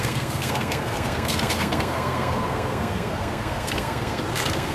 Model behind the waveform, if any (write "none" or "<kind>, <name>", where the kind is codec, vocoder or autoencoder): codec, SNAC